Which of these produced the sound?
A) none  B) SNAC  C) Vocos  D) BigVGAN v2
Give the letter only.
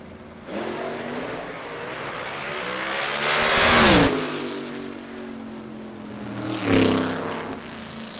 A